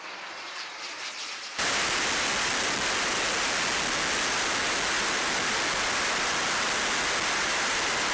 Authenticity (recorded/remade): recorded